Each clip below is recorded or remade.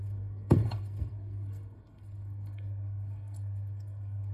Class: remade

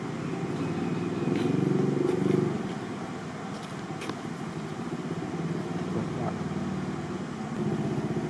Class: recorded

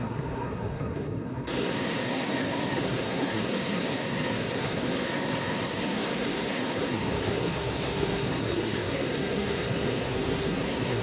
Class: remade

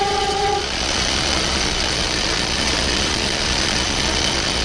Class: remade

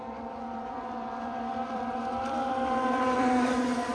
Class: remade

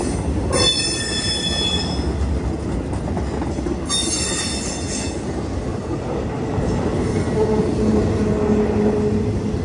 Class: recorded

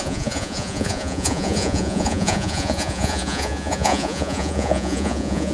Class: remade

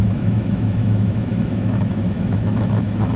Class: remade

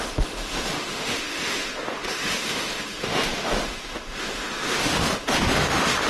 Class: remade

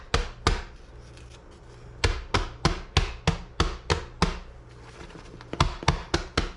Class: recorded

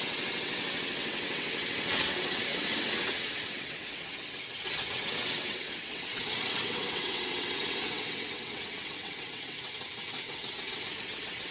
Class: remade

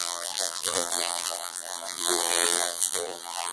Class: remade